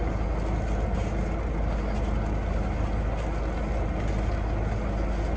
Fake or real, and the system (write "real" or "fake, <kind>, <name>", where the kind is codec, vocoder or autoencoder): real